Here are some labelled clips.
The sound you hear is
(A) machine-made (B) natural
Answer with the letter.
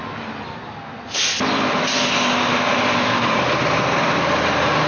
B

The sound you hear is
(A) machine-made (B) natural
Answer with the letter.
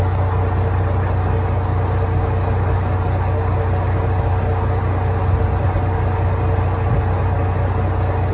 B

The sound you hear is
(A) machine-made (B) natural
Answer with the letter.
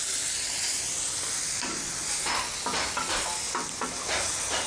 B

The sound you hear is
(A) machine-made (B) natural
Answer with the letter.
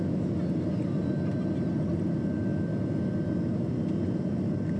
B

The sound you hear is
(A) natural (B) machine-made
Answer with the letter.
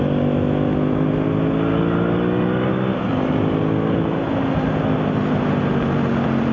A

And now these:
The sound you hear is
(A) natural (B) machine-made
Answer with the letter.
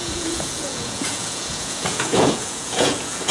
B